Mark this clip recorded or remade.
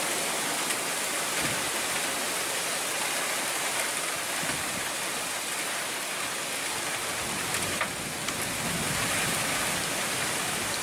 recorded